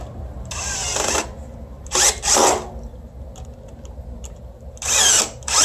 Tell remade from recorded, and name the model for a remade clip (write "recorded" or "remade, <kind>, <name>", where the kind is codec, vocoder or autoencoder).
recorded